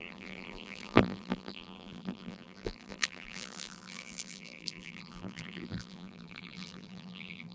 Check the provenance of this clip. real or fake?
fake